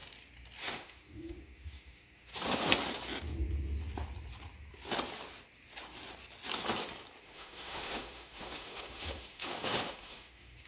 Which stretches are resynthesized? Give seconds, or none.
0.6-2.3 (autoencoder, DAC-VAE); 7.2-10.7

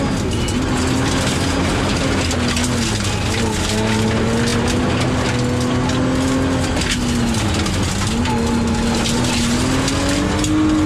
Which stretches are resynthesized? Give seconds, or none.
none